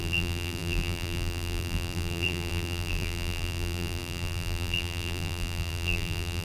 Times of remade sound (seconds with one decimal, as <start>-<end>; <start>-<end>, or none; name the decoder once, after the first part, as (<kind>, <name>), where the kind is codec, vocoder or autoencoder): 0.0-6.4 (vocoder, BigVGAN v2)